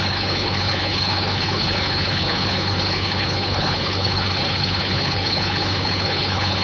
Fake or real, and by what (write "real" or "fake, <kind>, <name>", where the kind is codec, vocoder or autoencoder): fake, codec, HILCodec